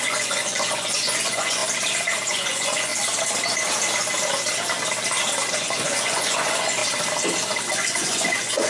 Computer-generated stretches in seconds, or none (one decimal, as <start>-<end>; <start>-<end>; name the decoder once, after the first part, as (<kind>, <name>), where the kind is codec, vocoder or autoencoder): 0.0-1.6 (vocoder, Vocos); 2.3-2.9; 5.5-6.8; 7.7-8.7